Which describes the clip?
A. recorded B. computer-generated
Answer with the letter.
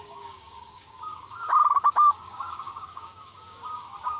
B